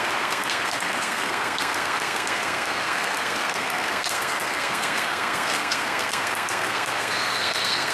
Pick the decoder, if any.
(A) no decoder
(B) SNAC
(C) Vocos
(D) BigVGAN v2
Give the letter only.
B